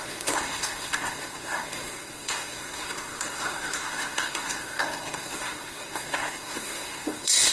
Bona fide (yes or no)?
no